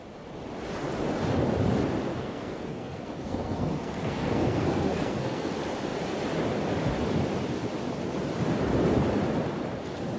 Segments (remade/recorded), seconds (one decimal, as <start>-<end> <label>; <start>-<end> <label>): 0.0-2.1 recorded; 2.1-5.5 remade; 5.5-10.2 recorded